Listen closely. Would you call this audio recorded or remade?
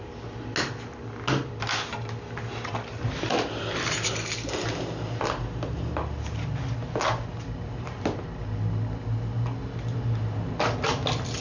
recorded